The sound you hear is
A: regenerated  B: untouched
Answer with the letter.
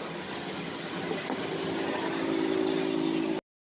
B